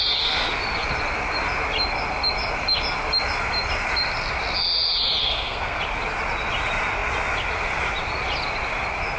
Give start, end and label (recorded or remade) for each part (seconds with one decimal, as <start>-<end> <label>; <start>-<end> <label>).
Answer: 0.0-5.2 recorded; 5.2-5.8 remade; 5.8-9.2 recorded